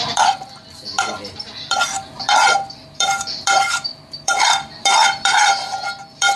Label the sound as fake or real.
fake